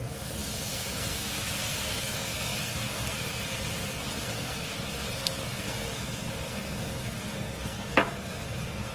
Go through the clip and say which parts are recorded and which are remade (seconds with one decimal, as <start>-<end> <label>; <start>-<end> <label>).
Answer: 0.0-8.9 remade